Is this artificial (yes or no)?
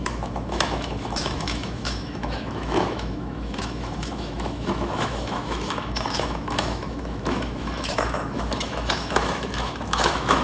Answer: yes